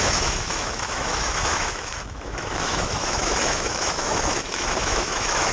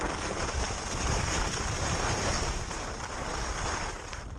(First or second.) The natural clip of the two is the second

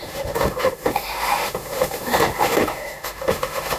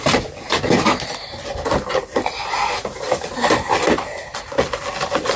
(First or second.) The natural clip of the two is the second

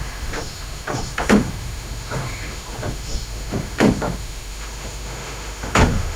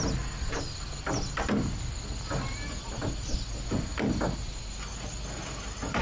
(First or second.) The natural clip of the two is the second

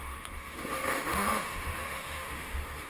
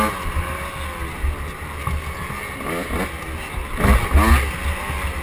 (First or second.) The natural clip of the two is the second